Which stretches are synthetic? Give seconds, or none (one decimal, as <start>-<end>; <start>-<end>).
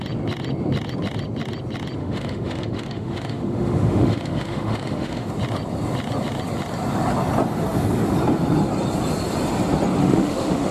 2.0-5.3; 10.0-10.7